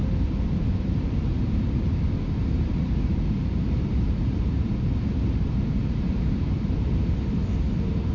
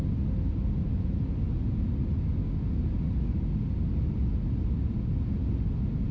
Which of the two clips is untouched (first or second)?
second